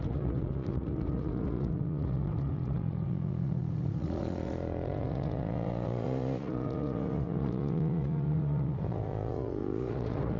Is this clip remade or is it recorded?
remade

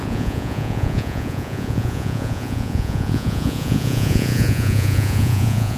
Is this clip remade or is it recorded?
remade